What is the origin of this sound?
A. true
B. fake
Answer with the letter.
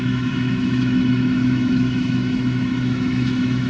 B